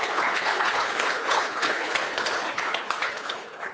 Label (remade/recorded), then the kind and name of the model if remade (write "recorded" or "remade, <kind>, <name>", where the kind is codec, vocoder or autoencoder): remade, codec, HILCodec